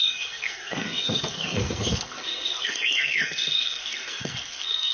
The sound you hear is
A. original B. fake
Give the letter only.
B